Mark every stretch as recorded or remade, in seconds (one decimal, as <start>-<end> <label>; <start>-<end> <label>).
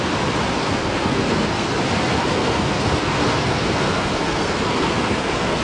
0.0-0.6 recorded; 0.6-1.7 remade; 1.7-2.1 recorded; 2.1-5.6 remade